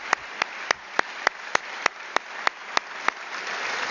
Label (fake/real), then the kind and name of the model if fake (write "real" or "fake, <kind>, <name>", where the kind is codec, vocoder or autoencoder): fake, vocoder, BigVGAN v2